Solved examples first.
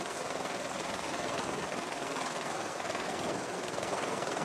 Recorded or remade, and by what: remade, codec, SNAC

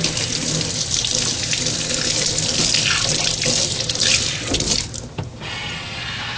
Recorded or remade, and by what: recorded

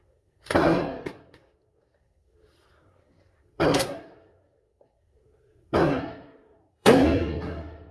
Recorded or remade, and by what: remade, codec, SNAC